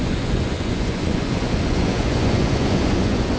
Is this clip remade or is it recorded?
remade